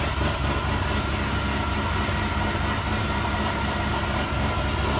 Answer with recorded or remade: recorded